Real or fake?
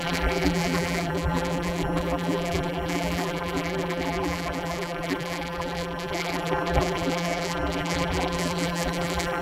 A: fake